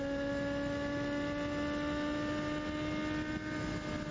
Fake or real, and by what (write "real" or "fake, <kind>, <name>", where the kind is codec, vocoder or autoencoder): real